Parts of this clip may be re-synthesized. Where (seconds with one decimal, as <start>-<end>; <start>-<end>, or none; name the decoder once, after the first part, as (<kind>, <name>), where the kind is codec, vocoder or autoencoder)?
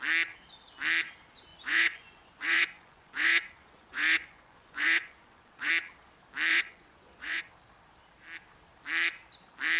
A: 1.5-5.7 (vocoder, Vocos); 6.5-7.4